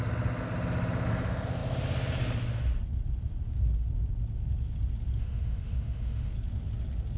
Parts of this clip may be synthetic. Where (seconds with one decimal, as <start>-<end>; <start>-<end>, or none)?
5.2-6.3